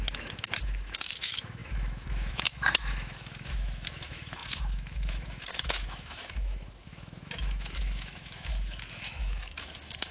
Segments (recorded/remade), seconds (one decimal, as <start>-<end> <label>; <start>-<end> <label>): 0.0-10.1 remade